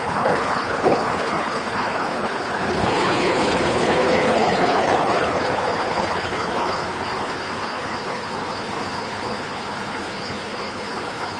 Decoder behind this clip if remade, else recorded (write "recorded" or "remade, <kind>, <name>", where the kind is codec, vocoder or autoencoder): remade, codec, HILCodec